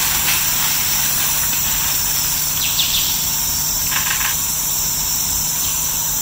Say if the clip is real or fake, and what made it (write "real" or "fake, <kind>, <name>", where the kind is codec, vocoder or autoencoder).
fake, vocoder, BigVGAN v2